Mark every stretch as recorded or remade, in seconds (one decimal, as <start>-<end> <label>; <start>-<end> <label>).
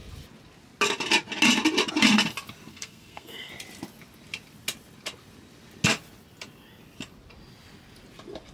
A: 0.0-2.7 recorded; 2.7-3.5 remade; 3.5-8.5 recorded